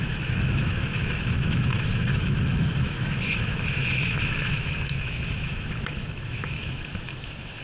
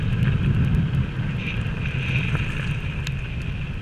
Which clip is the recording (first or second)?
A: second